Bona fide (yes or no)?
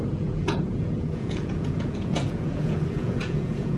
no